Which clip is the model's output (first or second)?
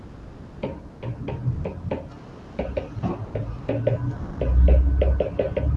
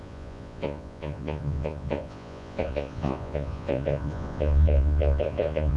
second